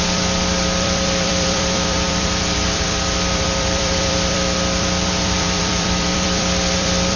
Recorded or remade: remade